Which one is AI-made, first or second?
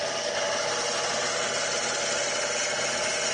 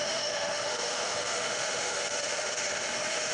second